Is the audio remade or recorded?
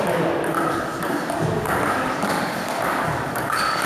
remade